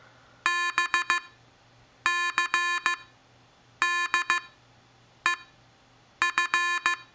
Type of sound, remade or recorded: recorded